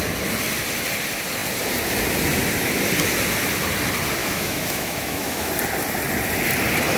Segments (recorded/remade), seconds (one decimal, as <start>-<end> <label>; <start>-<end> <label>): 0.0-4.2 recorded; 4.2-5.5 remade; 5.5-7.0 recorded